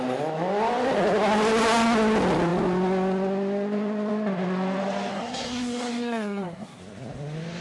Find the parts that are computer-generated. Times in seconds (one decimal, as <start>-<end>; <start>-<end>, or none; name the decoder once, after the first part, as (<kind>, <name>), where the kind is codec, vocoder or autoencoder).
5.1-6.8 (codec, SNAC)